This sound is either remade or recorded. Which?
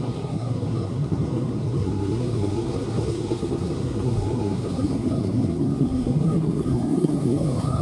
remade